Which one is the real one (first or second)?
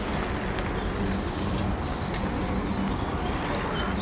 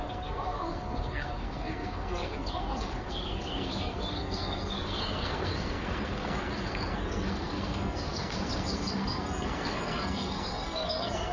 first